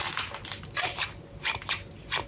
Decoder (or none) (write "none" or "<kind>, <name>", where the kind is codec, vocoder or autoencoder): none